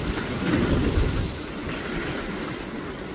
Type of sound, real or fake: real